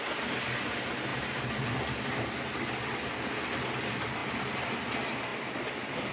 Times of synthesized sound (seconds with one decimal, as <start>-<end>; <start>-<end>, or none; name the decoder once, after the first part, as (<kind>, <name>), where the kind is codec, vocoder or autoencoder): none